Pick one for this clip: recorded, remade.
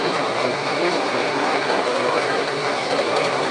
remade